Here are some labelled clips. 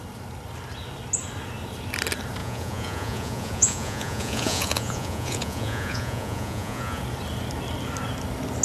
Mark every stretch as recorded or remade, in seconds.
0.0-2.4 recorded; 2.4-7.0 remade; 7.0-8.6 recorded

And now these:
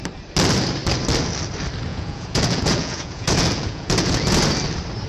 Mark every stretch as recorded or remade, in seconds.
0.0-1.9 recorded; 1.9-4.5 remade; 4.5-5.1 recorded

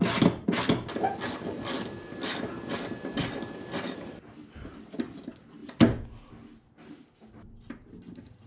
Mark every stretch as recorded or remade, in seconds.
0.0-8.5 recorded

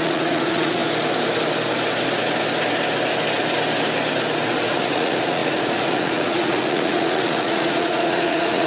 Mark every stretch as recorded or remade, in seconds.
0.0-0.8 remade; 0.8-4.6 recorded; 4.6-8.7 remade